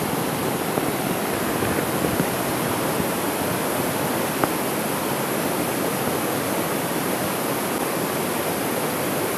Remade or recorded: recorded